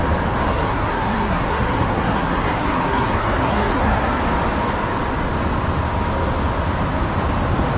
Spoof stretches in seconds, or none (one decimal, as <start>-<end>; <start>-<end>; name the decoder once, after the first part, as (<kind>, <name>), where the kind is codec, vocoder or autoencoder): 0.5-4.2 (codec, SNAC)